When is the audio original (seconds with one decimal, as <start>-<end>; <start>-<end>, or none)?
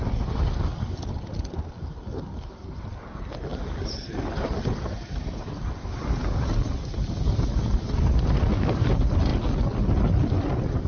0.0-6.2; 6.7-10.9